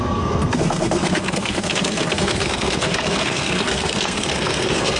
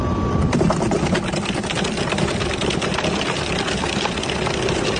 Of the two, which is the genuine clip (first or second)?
second